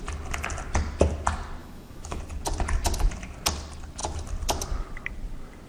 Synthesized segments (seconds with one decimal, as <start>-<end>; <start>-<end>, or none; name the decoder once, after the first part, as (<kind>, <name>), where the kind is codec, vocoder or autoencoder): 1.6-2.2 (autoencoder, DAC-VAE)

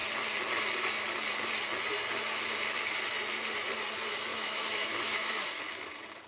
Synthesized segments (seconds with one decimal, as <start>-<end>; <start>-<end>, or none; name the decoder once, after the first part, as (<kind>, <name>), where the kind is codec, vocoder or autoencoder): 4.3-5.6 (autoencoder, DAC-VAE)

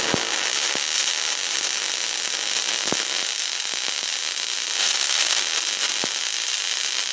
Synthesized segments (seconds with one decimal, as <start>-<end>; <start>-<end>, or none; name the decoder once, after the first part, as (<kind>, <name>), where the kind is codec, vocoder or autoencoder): 4.8-5.4 (autoencoder, DAC-VAE)

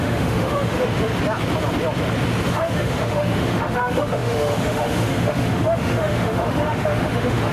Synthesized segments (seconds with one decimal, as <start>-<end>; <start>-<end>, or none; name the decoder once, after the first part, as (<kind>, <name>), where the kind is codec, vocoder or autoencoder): 0.0-1.1 (autoencoder, DAC-VAE); 2.5-7.5

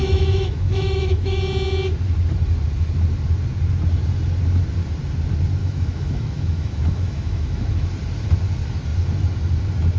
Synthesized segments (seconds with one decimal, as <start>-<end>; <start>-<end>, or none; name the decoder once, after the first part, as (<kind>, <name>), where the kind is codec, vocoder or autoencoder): 0.0-1.4 (autoencoder, DAC-VAE); 5.6-7.9

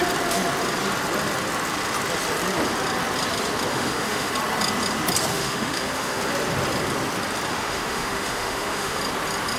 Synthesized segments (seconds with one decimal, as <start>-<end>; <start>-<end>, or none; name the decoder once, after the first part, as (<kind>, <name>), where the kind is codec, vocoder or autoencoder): 3.7-4.3 (autoencoder, DAC-VAE); 5.3-6.2; 7.5-9.0